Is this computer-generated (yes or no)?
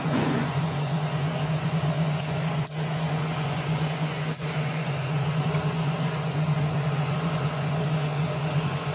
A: yes